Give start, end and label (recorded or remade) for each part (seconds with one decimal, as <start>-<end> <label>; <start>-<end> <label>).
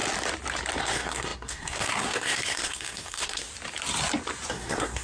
0.0-0.8 recorded; 0.8-3.5 remade; 3.5-4.5 recorded; 4.5-5.0 remade